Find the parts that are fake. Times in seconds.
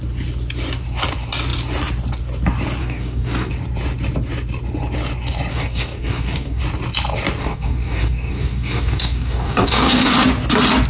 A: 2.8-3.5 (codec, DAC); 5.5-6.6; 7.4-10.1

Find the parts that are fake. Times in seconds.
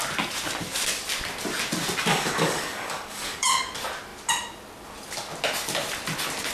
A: 2.1-3.5 (codec, DAC)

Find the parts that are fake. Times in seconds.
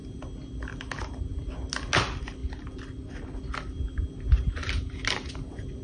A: none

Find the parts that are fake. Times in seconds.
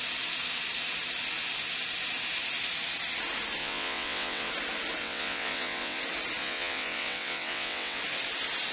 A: 3.6-4.5 (vocoder, WaveNeXt); 5.0-6.0; 6.4-8.0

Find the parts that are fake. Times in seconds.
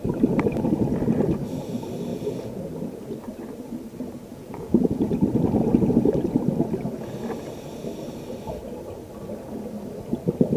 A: 2.1-2.6 (vocoder, Vocos); 4.3-5.1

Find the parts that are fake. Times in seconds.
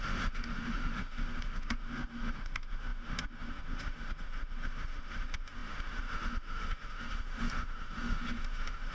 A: 0.0-8.9 (autoencoder, DAC-VAE)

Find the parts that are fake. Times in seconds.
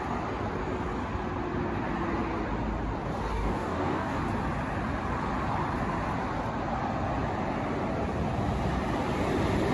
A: 3.3-4.2 (codec, DAC)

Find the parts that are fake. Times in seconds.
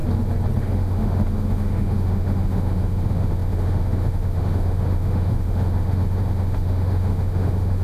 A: 0.6-7.8 (autoencoder, DAC-VAE)